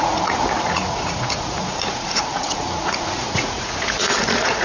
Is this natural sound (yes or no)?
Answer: no